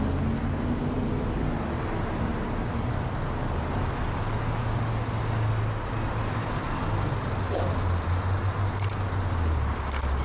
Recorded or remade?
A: recorded